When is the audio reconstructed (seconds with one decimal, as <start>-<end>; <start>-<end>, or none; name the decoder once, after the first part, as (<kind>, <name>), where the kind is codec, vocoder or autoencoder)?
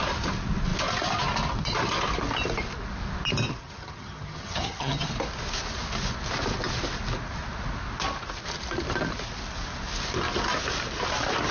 3.6-5.1 (vocoder, HiFi-GAN)